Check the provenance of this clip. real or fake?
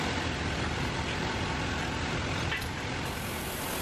real